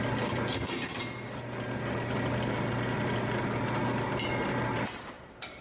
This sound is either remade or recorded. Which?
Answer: recorded